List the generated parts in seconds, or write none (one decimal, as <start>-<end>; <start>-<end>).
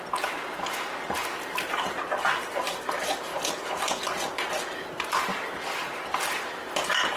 none